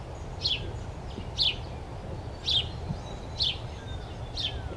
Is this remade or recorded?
recorded